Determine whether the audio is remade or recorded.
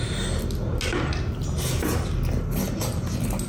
recorded